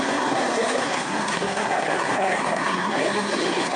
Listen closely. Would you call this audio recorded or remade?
remade